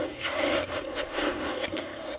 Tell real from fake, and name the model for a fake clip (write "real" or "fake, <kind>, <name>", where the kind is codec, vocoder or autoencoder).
fake, codec, SNAC